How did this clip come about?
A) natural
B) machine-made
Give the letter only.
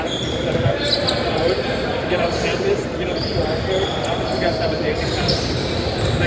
A